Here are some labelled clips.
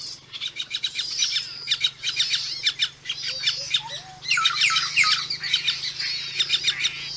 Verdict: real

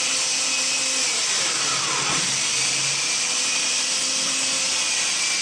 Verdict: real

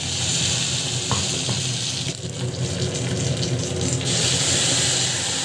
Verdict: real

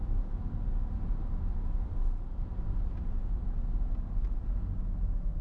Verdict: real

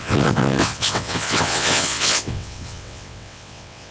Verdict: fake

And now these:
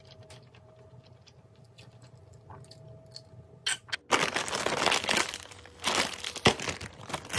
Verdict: real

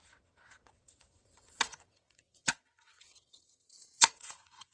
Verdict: fake